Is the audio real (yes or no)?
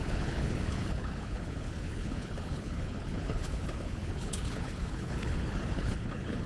no